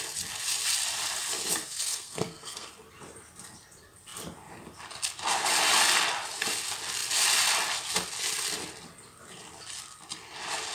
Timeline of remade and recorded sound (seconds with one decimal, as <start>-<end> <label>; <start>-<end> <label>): 0.0-1.6 recorded; 1.6-2.7 remade; 2.7-10.7 recorded